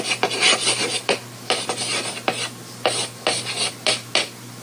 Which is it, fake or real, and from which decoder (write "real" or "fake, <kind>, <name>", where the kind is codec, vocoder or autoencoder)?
real